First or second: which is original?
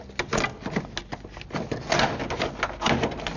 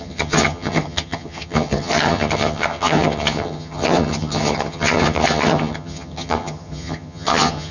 first